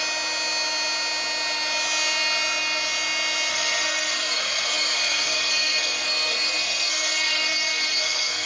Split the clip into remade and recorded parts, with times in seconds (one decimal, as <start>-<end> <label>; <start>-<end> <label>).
0.0-3.5 recorded; 3.5-8.5 remade